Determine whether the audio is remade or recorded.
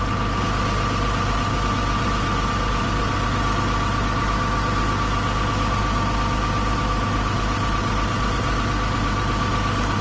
recorded